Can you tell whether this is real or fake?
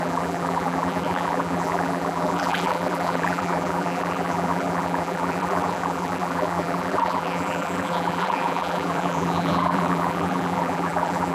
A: fake